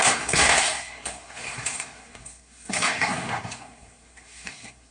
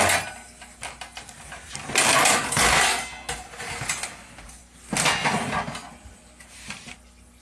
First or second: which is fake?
first